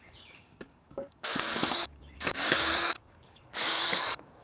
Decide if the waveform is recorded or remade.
remade